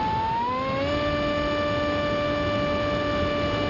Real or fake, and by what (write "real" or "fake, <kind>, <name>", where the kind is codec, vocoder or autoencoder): real